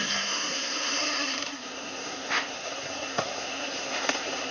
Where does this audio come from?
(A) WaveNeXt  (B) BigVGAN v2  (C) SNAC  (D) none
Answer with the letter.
C